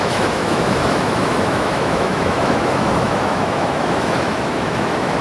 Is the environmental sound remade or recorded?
remade